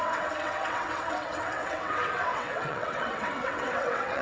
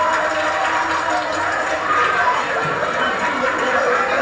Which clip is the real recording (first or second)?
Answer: second